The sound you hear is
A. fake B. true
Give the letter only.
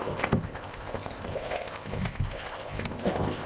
A